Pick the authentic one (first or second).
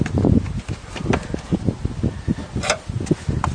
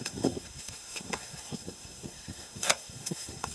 first